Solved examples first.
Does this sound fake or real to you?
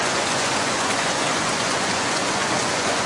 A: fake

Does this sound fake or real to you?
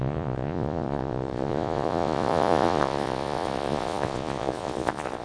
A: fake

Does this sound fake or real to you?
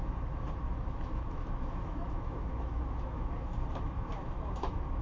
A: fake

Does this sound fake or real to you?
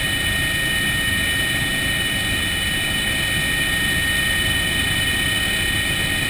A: real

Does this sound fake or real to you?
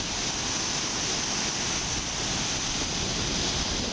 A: real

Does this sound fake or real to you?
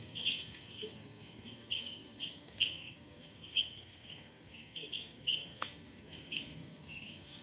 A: fake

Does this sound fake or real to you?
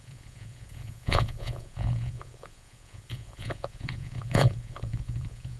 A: fake